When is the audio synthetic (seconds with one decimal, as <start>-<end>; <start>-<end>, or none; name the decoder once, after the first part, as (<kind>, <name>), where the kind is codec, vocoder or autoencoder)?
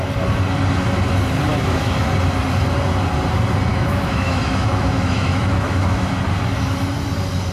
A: 1.5-2.1 (autoencoder, DAC-VAE); 3.7-6.1